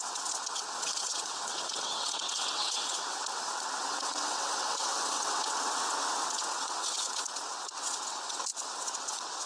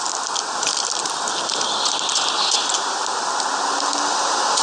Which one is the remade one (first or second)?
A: first